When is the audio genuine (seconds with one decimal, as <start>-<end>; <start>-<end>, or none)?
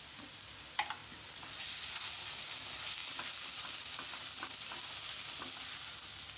0.0-6.4